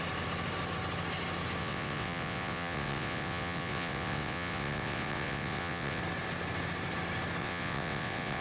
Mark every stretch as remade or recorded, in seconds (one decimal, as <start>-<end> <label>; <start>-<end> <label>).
0.0-1.6 recorded; 1.6-6.0 remade; 6.0-7.4 recorded; 7.4-8.4 remade